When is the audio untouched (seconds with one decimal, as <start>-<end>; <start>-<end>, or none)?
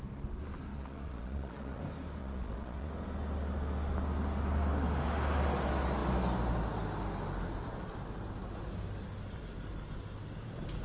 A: 0.0-0.7; 1.8-2.2; 2.9-10.8